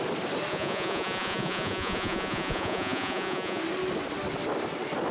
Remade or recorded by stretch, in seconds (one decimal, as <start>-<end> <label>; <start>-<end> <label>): 0.0-0.5 recorded; 0.5-3.6 remade; 3.6-5.1 recorded